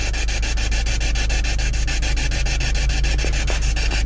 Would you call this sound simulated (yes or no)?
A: no